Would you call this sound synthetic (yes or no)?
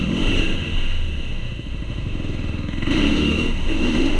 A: yes